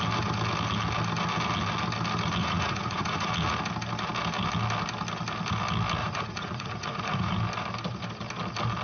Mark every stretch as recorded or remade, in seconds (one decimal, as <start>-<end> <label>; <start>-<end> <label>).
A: 0.0-2.4 recorded; 2.4-3.3 remade; 3.3-6.0 recorded; 6.0-7.3 remade; 7.3-8.8 recorded